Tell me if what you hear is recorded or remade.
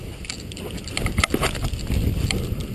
recorded